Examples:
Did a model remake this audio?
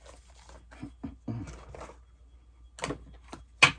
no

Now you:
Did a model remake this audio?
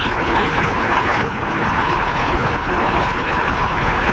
yes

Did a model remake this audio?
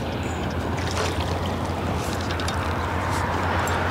no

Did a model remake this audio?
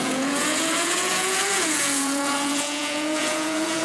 yes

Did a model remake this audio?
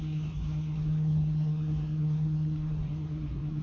yes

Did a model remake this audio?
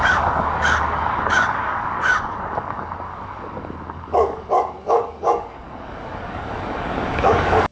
yes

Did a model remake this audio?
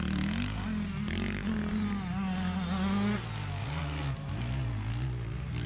no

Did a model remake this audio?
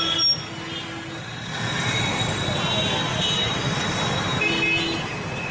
no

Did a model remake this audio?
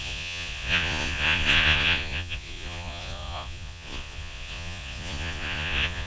yes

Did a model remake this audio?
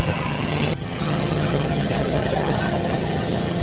yes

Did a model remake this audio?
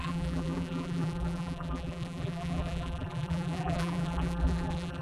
yes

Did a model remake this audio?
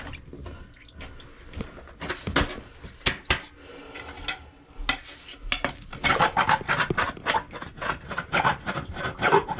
no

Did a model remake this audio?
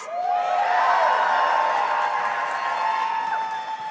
no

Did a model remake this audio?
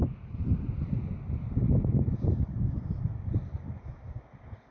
no